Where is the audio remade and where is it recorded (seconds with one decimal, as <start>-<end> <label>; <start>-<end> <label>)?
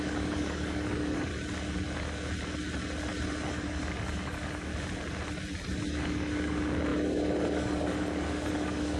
0.0-1.3 remade; 1.3-3.5 recorded; 3.5-4.7 remade; 4.7-5.9 recorded; 5.9-9.0 remade